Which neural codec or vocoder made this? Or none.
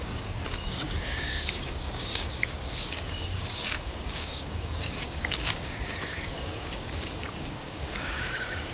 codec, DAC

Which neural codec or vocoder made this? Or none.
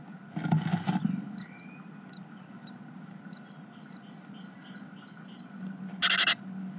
none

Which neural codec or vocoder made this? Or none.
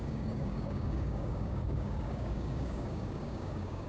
codec, DAC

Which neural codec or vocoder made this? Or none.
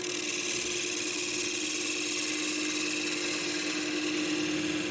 none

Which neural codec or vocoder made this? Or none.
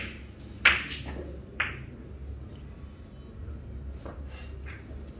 none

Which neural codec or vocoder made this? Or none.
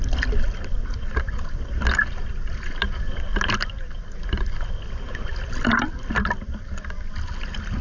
none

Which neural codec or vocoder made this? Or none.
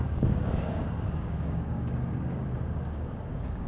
codec, DAC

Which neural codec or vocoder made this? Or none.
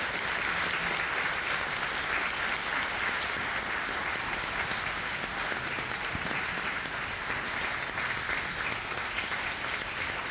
none